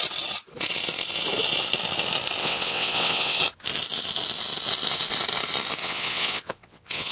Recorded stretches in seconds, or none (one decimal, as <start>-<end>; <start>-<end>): 0.0-2.4; 3.4-5.8